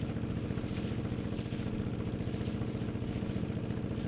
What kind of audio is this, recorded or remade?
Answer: recorded